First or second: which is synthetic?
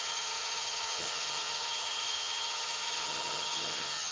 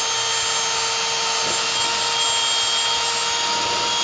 first